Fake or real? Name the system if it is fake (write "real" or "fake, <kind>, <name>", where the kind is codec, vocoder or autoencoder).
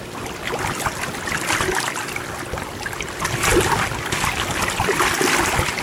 real